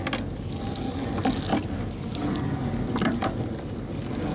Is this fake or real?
real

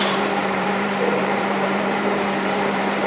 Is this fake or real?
fake